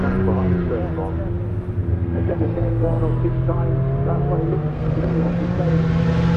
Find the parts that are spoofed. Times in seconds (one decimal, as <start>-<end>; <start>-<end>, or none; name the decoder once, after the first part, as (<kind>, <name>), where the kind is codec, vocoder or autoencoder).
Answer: 1.9-3.0 (codec, SNAC); 4.7-5.3